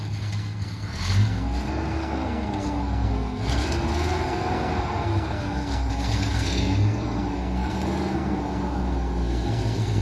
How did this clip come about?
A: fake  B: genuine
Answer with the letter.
A